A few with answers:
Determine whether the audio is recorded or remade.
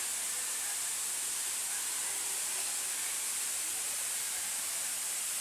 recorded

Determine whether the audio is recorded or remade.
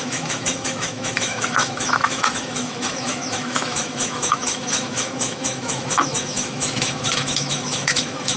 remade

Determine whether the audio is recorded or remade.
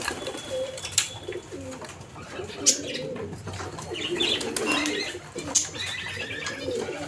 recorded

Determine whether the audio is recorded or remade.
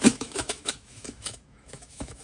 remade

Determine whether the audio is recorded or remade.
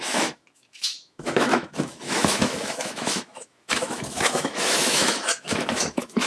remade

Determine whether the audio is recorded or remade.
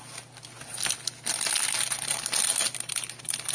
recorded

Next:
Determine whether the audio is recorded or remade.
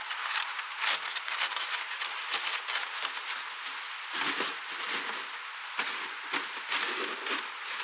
recorded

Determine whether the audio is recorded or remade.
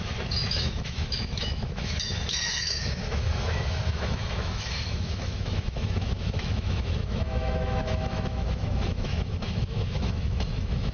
remade